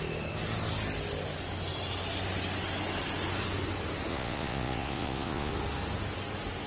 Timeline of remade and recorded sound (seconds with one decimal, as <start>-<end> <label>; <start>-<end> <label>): 0.0-4.1 recorded; 4.1-5.5 remade; 5.5-6.7 recorded